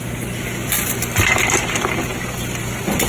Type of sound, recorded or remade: recorded